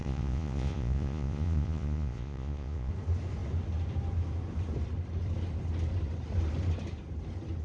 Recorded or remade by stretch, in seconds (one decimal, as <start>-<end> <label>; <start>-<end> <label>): 0.0-2.9 remade; 2.9-7.6 recorded

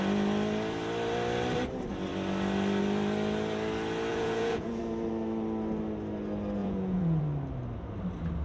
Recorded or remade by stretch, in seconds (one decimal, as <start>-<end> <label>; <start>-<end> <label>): 0.0-4.1 recorded; 4.1-4.8 remade; 4.8-6.6 recorded; 6.6-7.2 remade; 7.2-8.4 recorded